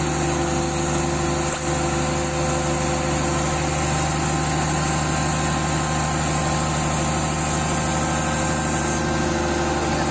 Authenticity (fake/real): real